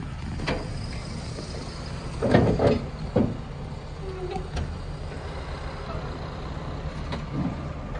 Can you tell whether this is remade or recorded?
recorded